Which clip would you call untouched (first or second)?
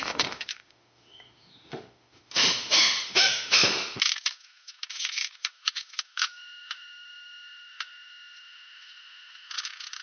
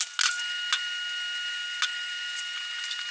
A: second